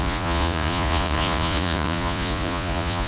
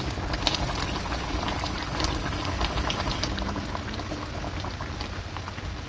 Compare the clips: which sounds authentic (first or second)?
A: second